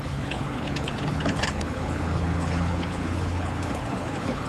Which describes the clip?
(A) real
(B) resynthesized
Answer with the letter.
B